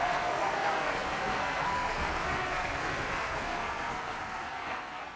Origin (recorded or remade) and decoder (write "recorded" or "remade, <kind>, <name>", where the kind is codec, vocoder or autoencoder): remade, codec, SNAC